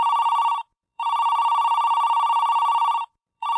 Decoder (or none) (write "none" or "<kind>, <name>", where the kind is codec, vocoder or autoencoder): vocoder, BigVGAN v2